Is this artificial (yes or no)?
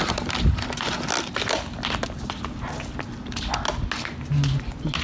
no